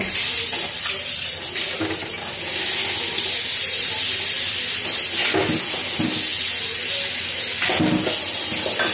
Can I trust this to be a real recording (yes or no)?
yes